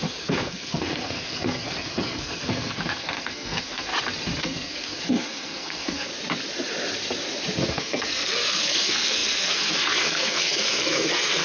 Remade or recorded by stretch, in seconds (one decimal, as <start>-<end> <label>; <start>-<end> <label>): 0.0-3.9 remade; 3.9-4.4 recorded; 4.4-6.1 remade; 6.1-7.7 recorded; 7.7-11.4 remade

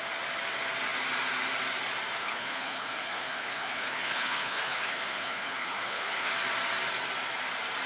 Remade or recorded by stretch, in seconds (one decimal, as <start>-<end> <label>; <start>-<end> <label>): 0.0-2.2 recorded; 2.2-6.3 remade; 6.3-7.9 recorded

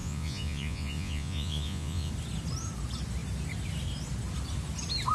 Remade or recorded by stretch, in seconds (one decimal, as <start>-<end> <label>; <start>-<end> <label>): 0.0-2.1 remade; 2.1-5.1 recorded

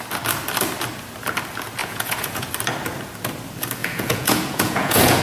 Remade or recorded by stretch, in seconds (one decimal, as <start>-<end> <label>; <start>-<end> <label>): 0.0-1.8 recorded; 1.8-2.5 remade; 2.5-3.8 recorded; 3.8-5.2 remade

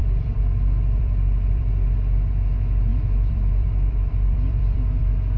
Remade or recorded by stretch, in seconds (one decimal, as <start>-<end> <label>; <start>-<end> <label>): 0.0-1.7 remade; 1.7-2.9 recorded; 2.9-5.0 remade; 5.0-5.4 recorded

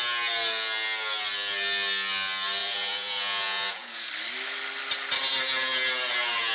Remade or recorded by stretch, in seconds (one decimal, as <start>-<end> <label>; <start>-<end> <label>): 0.0-2.6 recorded; 2.6-4.1 remade; 4.1-6.5 recorded

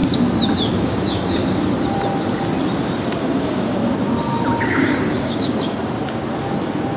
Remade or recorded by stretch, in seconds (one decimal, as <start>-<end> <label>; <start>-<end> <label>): 0.0-0.8 recorded; 0.8-1.4 remade; 1.4-3.2 recorded; 3.2-3.8 remade; 3.8-4.6 recorded; 4.6-5.8 remade; 5.8-7.0 recorded

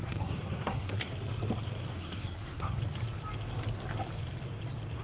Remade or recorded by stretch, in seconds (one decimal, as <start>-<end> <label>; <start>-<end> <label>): 0.0-1.1 remade; 1.1-1.9 recorded; 1.9-2.8 remade; 2.8-5.0 recorded